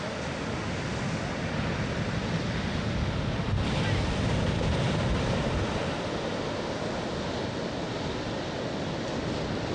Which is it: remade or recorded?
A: recorded